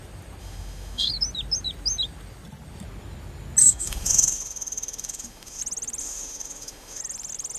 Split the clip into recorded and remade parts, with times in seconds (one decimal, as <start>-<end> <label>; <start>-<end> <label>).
0.0-0.4 recorded; 0.4-1.1 remade; 1.1-3.6 recorded; 3.6-5.6 remade; 5.6-6.0 recorded; 6.0-7.0 remade; 7.0-7.6 recorded